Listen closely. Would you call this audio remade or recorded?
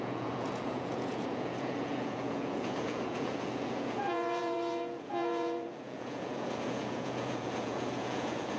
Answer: remade